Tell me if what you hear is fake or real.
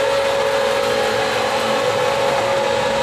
real